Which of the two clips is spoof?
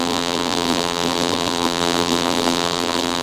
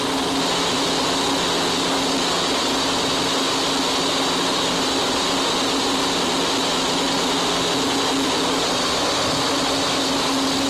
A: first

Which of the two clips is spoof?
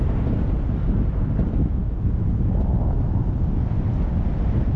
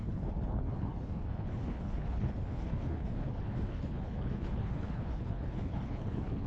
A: second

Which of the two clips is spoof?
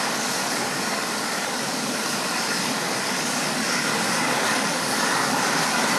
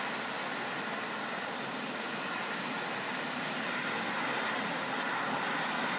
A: first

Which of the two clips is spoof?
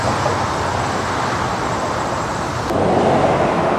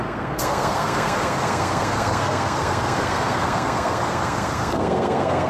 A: second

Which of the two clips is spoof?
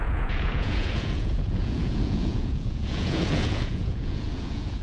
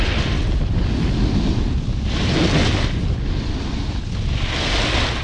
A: first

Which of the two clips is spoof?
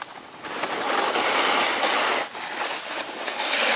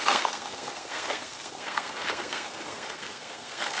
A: second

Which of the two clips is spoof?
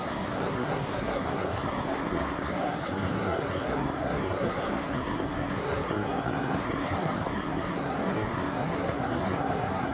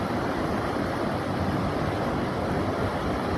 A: first